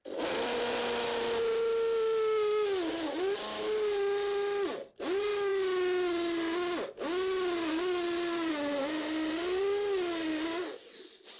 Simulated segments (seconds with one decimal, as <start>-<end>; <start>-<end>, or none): none